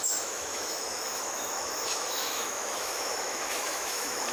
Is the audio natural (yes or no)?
no